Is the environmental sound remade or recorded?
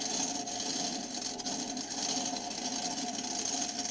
recorded